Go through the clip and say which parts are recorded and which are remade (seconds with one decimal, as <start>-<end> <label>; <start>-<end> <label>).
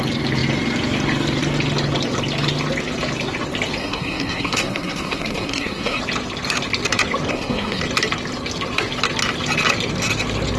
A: 0.0-3.8 recorded; 3.8-6.0 remade; 6.0-7.3 recorded; 7.3-7.8 remade; 7.8-10.6 recorded